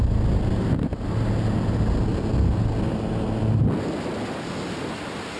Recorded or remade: recorded